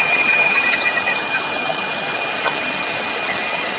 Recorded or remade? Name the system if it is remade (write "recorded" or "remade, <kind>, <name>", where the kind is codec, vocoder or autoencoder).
remade, vocoder, HiFi-GAN